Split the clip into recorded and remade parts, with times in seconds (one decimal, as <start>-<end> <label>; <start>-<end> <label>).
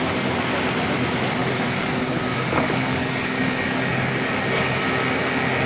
0.0-1.4 recorded; 1.4-4.8 remade; 4.8-5.7 recorded